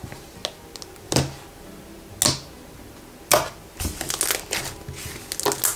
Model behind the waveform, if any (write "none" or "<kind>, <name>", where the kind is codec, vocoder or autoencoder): none